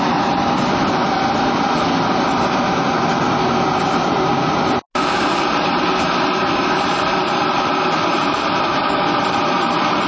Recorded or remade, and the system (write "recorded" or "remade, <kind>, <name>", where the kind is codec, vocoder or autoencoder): recorded